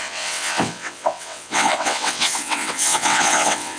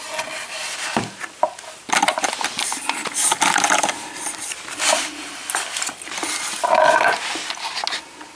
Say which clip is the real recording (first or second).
second